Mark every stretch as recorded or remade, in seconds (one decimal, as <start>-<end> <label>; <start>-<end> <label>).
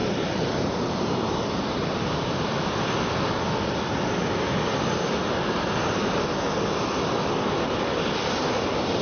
0.0-3.0 remade; 3.0-9.0 recorded